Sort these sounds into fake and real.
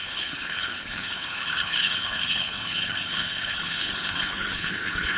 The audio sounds fake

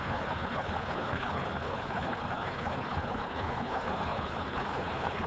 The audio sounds fake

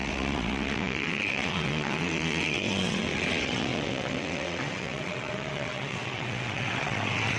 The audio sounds fake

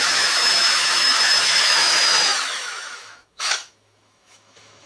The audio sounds fake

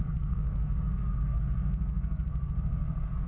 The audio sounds fake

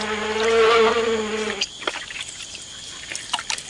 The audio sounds real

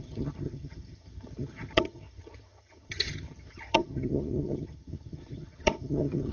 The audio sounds fake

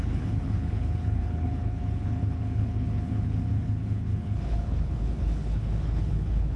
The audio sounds fake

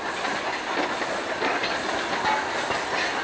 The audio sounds real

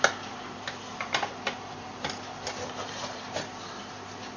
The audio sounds real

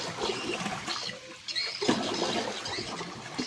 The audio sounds real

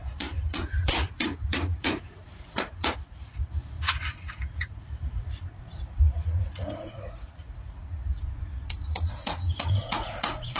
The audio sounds fake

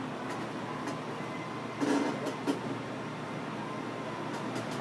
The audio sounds real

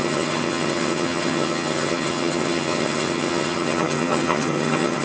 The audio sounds fake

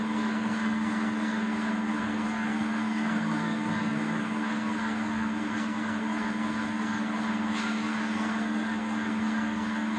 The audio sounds fake